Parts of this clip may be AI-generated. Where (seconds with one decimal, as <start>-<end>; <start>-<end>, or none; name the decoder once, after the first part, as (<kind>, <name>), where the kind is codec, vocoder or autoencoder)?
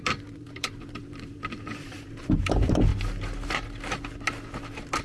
0.0-2.9 (vocoder, BigVGAN v2)